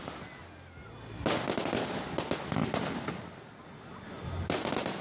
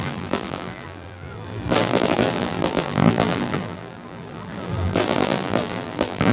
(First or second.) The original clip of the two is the first